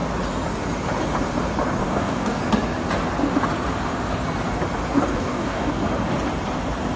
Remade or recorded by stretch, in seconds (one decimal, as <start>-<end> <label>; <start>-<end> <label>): 0.0-1.8 recorded; 1.8-2.4 remade; 2.4-5.1 recorded; 5.1-5.7 remade; 5.7-7.0 recorded